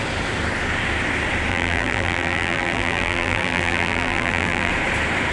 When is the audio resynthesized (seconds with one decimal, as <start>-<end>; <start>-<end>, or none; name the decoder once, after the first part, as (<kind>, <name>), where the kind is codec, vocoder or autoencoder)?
1.5-4.7 (vocoder, BigVGAN v2)